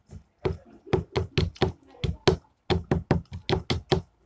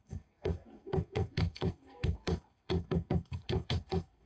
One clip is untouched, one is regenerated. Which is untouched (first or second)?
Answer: first